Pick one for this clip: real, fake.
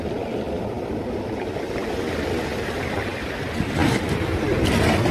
real